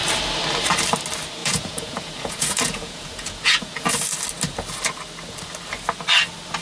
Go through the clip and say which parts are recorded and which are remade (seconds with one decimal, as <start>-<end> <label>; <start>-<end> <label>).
0.0-1.4 recorded; 1.4-3.9 remade; 3.9-6.6 recorded